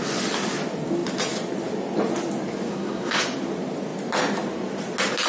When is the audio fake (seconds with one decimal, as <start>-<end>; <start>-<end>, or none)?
2.7-3.2